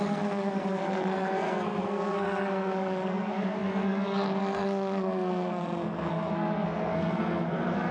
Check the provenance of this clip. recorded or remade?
remade